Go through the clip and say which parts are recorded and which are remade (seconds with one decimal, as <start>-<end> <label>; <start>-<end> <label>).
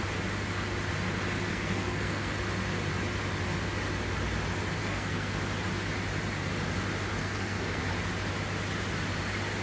0.0-1.5 recorded; 1.5-2.3 remade; 2.3-4.8 recorded; 4.8-5.4 remade; 5.4-7.2 recorded; 7.2-7.9 remade; 7.9-9.6 recorded